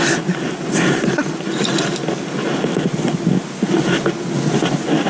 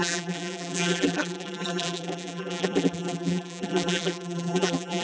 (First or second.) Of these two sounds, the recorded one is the first